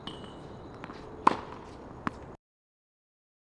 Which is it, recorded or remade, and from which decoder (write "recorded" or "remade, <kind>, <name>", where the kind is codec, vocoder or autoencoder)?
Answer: recorded